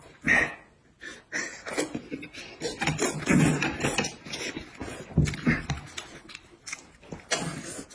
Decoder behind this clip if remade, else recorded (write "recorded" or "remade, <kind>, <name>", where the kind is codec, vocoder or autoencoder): recorded